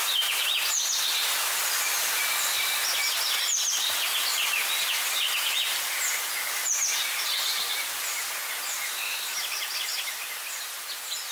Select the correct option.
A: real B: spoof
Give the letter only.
A